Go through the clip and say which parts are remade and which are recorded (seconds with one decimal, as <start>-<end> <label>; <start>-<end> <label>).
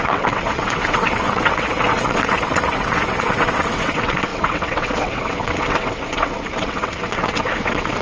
0.0-8.0 remade